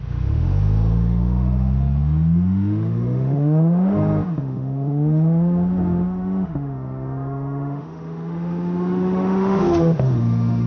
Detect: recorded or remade remade